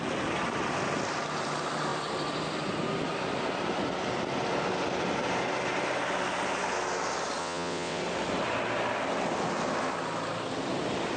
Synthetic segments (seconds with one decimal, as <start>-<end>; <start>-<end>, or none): 7.4-8.0